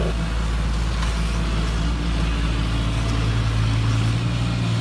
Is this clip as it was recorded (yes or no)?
yes